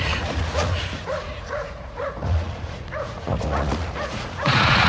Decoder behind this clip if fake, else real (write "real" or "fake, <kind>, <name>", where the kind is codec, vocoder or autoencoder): fake, vocoder, Vocos